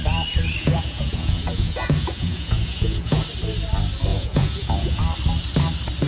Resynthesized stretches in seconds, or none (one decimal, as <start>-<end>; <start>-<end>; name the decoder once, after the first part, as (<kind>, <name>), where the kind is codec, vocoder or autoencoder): 0.6-3.2 (vocoder, Vocos); 4.1-5.0